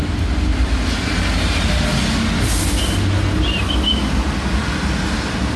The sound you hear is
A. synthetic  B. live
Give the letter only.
B